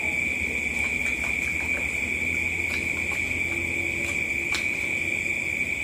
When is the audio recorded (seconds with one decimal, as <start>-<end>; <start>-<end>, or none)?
0.0-5.8